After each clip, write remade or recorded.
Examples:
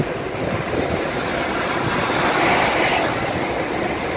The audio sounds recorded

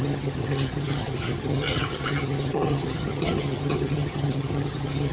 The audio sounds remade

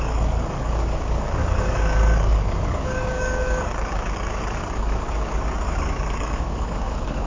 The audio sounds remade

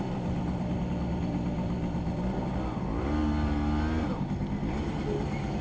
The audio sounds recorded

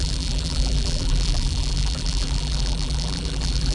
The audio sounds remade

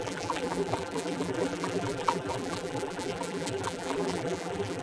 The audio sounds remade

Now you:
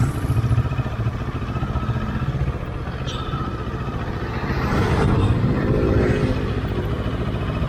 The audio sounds recorded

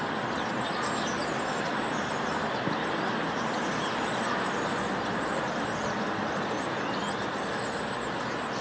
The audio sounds recorded